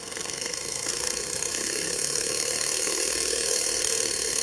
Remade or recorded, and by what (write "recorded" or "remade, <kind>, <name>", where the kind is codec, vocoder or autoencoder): remade, codec, SNAC